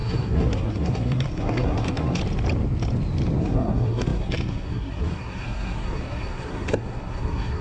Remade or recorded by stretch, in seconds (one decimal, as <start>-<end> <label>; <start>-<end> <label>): 0.0-2.2 remade; 2.2-3.4 recorded; 3.4-7.6 remade